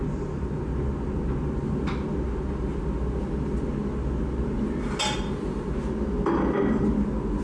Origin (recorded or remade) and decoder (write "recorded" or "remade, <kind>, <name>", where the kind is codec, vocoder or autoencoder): recorded